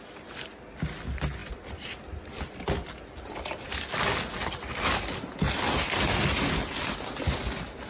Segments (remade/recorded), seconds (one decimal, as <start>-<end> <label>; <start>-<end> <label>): 0.0-1.4 recorded; 1.4-3.8 remade; 3.8-4.4 recorded; 4.4-5.3 remade; 5.3-7.9 recorded